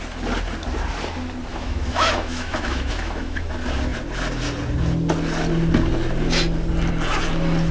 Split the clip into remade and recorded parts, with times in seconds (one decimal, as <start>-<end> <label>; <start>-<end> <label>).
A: 0.0-1.5 recorded; 1.5-3.5 remade; 3.5-7.7 recorded